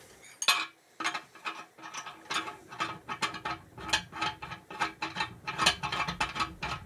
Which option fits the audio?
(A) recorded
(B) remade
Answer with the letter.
A